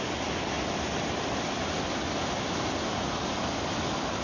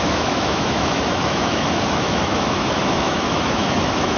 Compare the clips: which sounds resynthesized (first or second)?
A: second